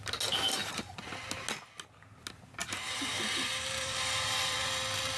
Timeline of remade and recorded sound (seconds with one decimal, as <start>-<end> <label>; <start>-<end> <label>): 0.0-0.6 recorded; 0.6-1.3 remade; 1.3-2.6 recorded; 2.6-4.7 remade; 4.7-5.2 recorded